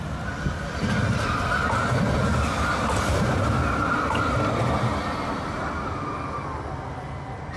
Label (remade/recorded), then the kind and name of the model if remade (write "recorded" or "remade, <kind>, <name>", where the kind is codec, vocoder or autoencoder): recorded